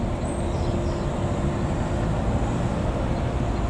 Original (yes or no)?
yes